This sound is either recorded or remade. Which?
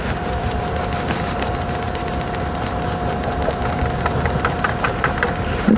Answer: remade